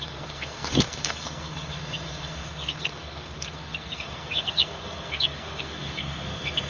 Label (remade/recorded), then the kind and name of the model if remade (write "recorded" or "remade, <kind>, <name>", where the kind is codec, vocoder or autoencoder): remade, codec, SNAC